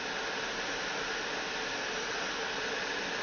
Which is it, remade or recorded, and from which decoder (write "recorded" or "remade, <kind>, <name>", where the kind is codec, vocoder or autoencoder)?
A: recorded